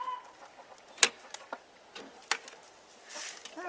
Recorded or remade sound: recorded